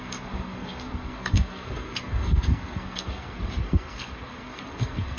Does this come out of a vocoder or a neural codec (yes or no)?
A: yes